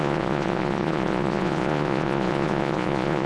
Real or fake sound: fake